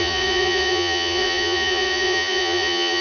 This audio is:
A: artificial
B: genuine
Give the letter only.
A